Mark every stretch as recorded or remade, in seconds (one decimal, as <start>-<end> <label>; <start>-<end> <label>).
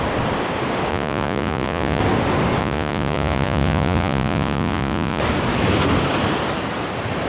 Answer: 0.0-0.9 recorded; 0.9-2.0 remade; 2.0-2.6 recorded; 2.6-5.2 remade; 5.2-7.3 recorded